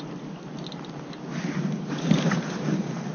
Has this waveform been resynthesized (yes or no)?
no